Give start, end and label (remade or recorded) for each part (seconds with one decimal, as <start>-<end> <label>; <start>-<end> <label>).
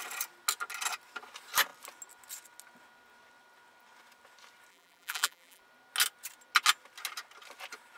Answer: 0.0-4.7 recorded; 4.7-5.6 remade; 5.6-8.0 recorded